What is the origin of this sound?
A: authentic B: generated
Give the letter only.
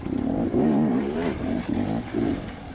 B